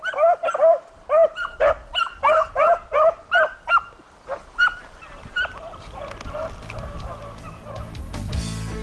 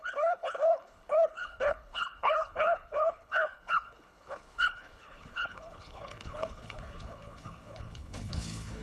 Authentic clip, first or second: first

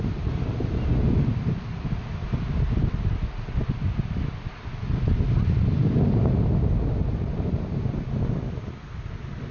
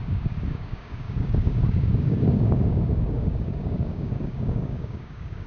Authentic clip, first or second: first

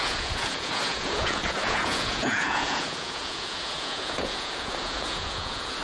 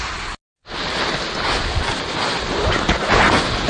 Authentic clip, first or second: second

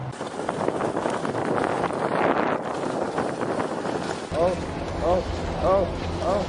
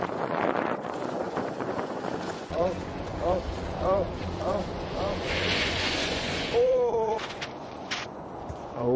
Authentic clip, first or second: first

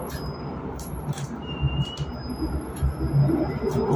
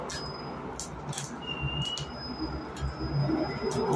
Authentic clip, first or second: second